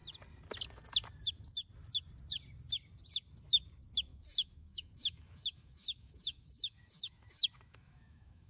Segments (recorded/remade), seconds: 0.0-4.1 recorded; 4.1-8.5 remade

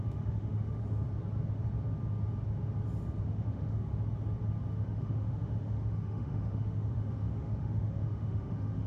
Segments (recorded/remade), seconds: 0.0-0.8 remade; 0.8-3.2 recorded; 3.2-3.9 remade; 3.9-4.7 recorded; 4.7-8.9 remade

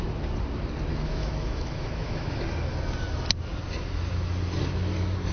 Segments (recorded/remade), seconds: 0.0-0.9 recorded; 0.9-2.4 remade; 2.4-5.3 recorded

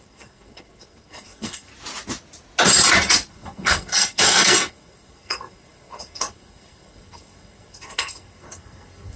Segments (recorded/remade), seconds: 0.0-1.7 remade; 1.7-3.3 recorded; 3.3-9.2 remade

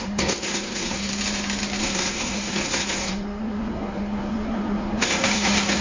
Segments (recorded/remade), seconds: 0.0-1.1 remade; 1.1-1.8 recorded; 1.8-5.8 remade

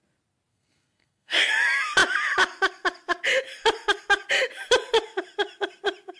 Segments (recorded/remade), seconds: 0.0-0.5 recorded; 0.5-1.5 remade; 1.5-6.2 recorded